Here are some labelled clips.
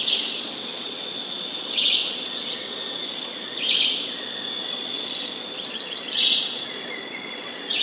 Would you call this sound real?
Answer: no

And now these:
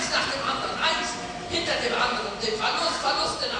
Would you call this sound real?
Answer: yes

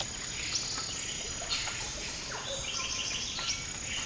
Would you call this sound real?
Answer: yes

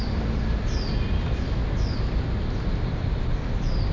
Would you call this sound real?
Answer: yes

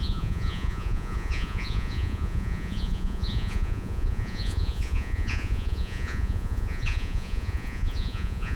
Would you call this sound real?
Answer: no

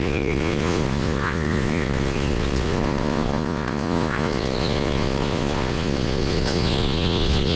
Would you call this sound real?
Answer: no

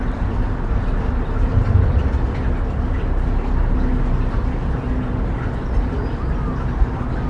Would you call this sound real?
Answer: yes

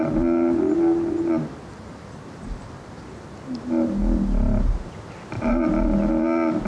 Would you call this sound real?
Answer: yes